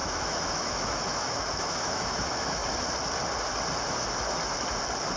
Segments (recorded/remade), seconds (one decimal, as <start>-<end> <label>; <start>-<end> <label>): 0.0-2.6 remade; 2.6-5.2 recorded